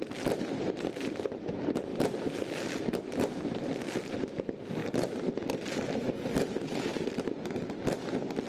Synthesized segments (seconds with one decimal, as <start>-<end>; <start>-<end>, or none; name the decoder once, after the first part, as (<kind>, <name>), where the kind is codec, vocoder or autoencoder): none